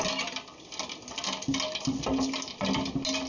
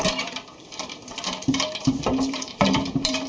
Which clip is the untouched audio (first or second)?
first